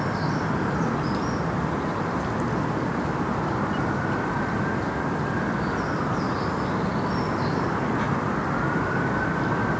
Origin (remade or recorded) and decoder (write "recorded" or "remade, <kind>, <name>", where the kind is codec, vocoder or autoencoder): recorded